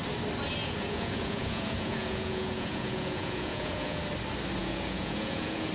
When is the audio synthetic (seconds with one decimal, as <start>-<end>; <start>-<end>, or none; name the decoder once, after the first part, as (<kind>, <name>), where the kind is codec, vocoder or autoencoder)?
0.6-4.0 (vocoder, Vocos); 4.6-5.7